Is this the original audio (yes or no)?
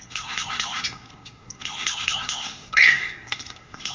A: no